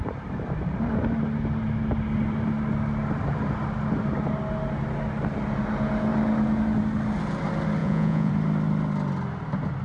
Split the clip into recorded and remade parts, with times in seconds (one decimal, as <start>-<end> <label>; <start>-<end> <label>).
0.0-7.8 recorded; 7.8-8.3 remade; 8.3-9.8 recorded